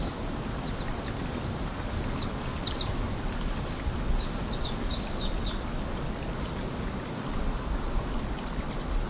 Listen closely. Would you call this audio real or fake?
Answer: real